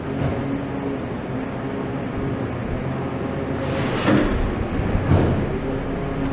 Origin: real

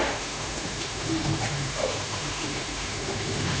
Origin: fake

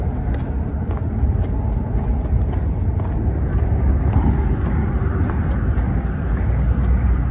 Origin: real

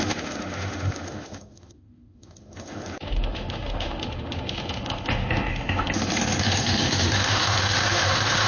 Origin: fake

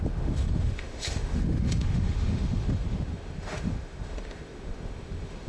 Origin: fake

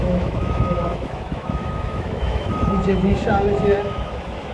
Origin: fake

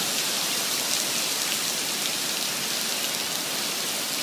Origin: real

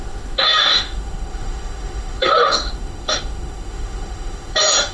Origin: fake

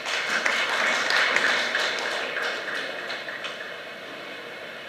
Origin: real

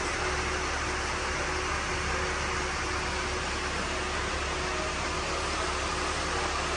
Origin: real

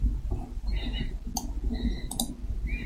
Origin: real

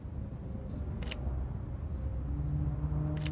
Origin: real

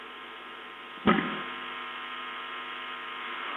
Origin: real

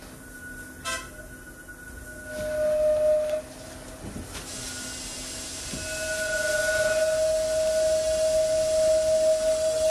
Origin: real